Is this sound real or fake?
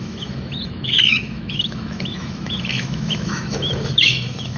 fake